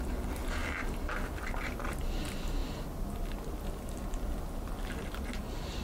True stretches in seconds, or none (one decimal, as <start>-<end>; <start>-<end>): 0.0-5.8